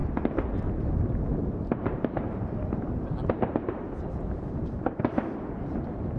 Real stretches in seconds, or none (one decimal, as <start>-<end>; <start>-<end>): 0.0-1.3; 5.0-6.2